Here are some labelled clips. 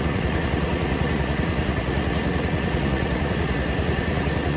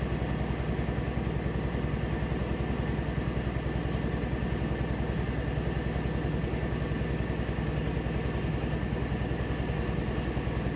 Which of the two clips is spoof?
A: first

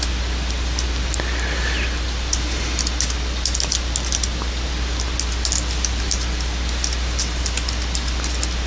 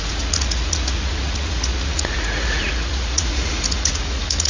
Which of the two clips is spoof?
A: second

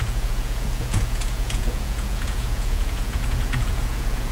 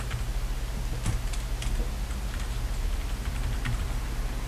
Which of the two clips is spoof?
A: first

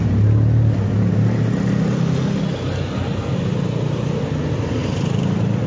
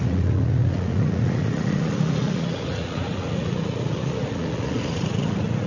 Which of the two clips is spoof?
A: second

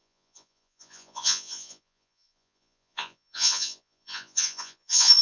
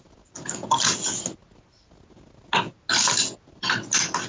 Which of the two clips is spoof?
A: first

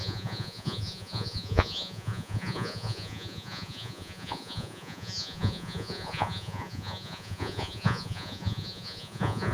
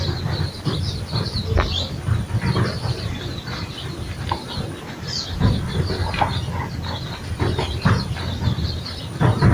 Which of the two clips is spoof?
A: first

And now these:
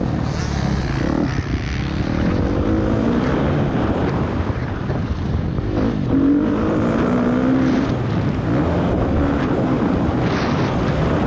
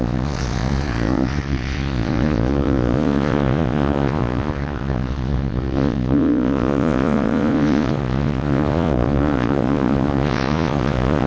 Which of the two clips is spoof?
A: second